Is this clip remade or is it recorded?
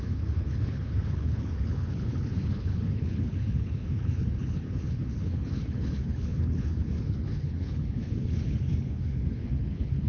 remade